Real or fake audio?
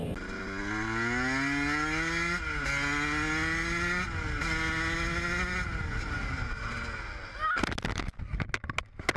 real